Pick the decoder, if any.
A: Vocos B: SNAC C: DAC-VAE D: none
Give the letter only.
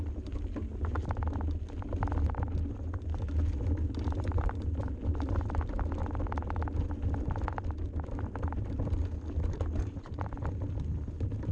D